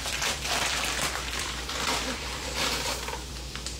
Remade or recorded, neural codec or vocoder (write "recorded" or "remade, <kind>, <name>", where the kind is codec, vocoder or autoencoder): remade, vocoder, BigVGAN v2